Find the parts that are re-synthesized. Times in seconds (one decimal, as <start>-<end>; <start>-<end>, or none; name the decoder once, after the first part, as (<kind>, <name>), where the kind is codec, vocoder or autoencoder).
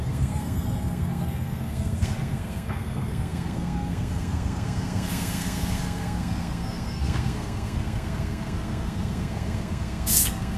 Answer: 0.0-10.6 (codec, SNAC)